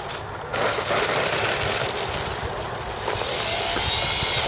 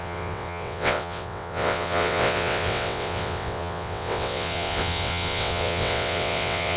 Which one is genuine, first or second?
first